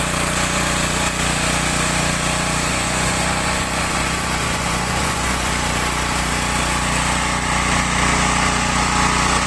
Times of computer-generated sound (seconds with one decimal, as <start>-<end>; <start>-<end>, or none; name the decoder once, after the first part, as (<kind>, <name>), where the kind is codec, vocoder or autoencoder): 2.7-5.5 (vocoder, Vocos)